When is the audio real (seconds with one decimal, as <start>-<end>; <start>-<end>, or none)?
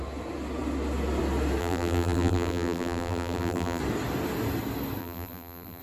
0.0-1.6; 3.8-5.0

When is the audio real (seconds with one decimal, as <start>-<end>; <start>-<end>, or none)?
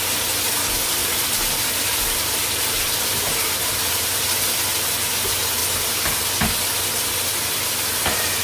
0.0-1.0; 4.3-8.4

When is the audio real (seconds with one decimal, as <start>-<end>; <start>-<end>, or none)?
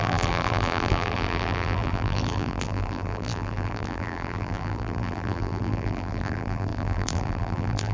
none